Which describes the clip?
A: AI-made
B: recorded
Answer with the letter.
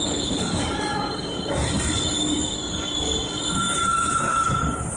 A